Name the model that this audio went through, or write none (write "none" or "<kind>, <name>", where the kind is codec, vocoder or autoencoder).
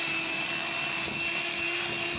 none